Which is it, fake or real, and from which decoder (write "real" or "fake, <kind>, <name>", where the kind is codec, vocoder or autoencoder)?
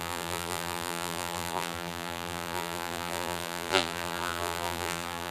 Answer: fake, vocoder, BigVGAN v2